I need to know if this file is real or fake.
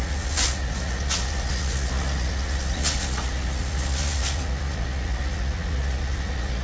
fake